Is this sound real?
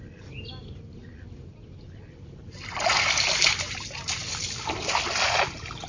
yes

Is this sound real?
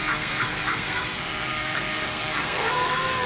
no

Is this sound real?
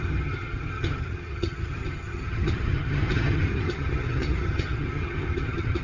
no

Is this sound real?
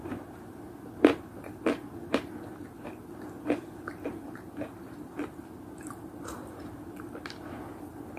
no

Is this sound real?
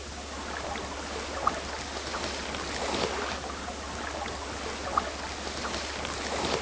yes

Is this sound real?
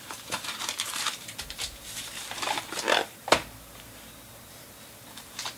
no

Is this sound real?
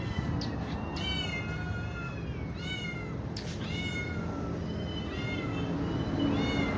yes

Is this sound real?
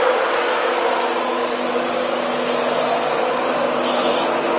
yes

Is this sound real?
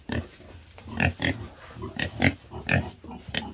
yes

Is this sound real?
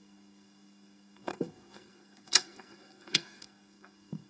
no